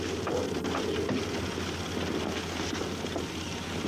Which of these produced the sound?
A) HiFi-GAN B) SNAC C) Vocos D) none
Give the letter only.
D